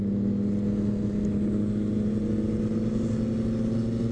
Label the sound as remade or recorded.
recorded